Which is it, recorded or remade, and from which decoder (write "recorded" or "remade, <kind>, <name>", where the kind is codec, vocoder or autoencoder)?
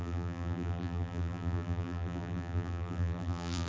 remade, vocoder, BigVGAN v2